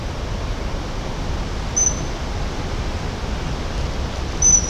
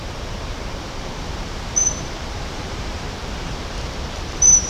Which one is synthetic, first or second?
second